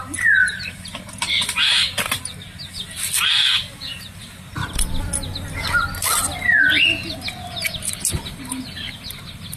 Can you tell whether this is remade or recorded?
recorded